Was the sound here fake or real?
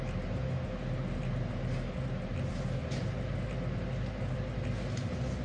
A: real